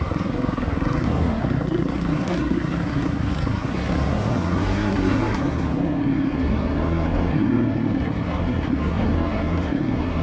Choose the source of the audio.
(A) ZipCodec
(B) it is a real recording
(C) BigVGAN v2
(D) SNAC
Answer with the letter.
D